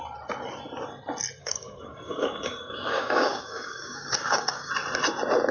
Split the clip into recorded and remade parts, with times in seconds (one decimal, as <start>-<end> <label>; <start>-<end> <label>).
0.0-1.4 recorded; 1.4-4.7 remade; 4.7-5.5 recorded

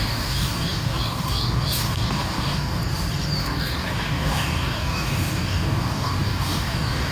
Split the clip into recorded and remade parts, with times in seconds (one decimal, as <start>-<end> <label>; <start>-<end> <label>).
0.0-2.8 remade; 2.8-3.4 recorded; 3.4-7.1 remade

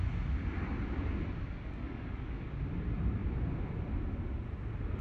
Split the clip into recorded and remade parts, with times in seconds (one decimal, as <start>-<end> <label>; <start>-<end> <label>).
0.0-1.4 recorded; 1.4-2.5 remade; 2.5-5.0 recorded